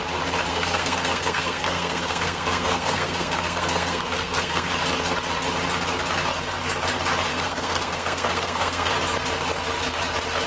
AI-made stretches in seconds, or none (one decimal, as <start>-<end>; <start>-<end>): 0.5-4.7; 7.3-8.9

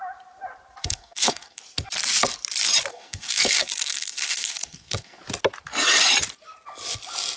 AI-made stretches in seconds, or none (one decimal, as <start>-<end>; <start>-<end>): 0.8-1.6; 2.9-5.2

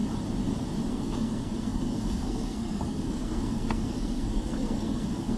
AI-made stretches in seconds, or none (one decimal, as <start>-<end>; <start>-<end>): 0.9-5.4

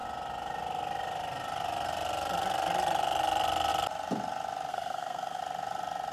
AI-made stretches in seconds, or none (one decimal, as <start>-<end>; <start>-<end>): 4.7-5.4

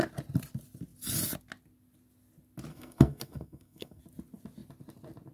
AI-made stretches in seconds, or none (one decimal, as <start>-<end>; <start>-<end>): 2.7-4.0